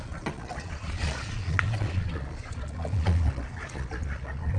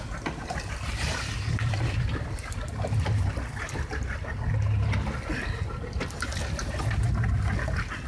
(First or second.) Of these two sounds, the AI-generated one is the first